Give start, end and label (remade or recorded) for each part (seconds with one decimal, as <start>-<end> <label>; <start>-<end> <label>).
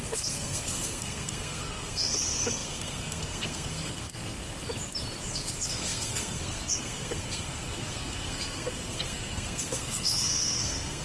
0.0-4.4 remade; 4.4-5.2 recorded; 5.2-11.0 remade